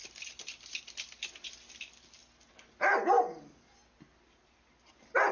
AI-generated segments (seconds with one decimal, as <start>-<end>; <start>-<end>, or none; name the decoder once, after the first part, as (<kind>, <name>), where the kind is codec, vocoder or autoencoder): none